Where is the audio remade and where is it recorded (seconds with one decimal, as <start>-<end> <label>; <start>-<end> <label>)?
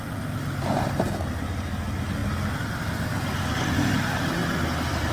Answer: 0.0-5.1 recorded